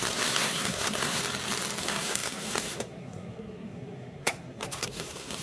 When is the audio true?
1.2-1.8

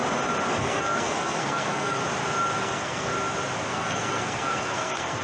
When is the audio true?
0.0-0.6; 2.0-2.6; 3.1-3.7

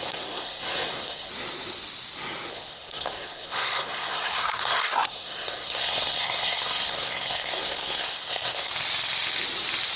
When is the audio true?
1.3-2.5; 8.7-10.0

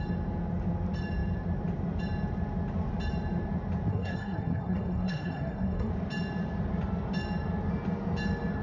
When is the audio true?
0.0-3.9; 5.9-8.6

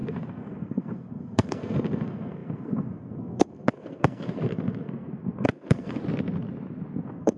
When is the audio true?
6.0-7.0

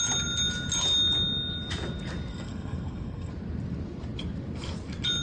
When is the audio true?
0.0-2.3; 3.3-5.2

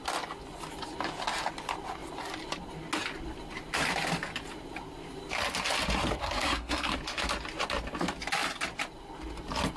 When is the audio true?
0.0-6.2; 6.9-9.8